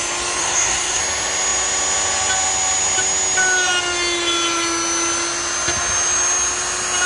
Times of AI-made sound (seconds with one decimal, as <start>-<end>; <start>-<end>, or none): 0.4-1.0